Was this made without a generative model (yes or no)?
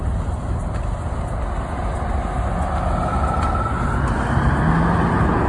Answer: yes